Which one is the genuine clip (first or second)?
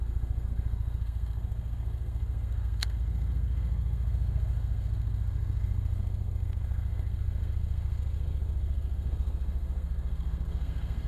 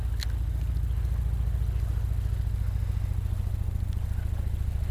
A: second